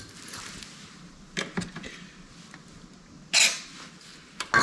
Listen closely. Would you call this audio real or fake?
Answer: real